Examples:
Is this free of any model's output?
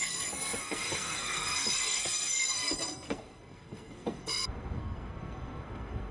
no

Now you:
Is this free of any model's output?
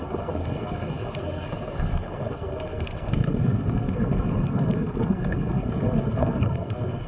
no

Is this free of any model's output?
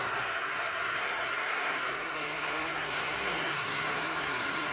no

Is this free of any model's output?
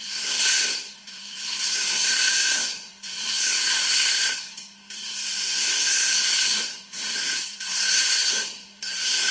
no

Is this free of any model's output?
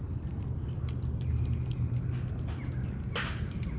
yes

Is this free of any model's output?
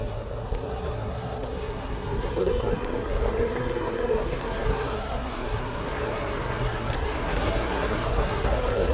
no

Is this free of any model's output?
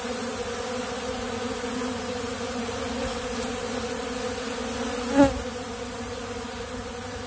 yes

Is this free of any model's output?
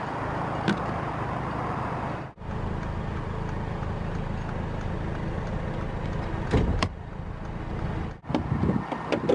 yes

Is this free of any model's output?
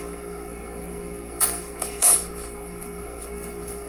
no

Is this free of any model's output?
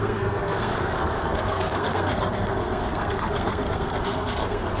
no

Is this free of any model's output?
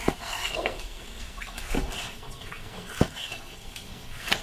no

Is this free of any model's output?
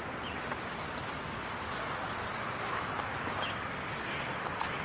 yes